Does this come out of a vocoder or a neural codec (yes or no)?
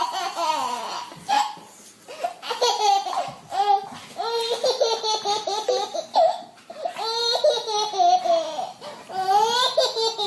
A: no